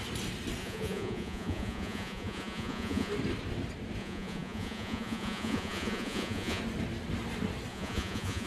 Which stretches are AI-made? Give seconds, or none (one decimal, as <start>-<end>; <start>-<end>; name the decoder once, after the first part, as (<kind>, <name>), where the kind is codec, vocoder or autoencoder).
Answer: 0.6-3.1 (vocoder, Vocos); 4.0-6.6; 7.7-8.5